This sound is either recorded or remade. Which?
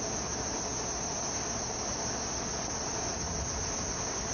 recorded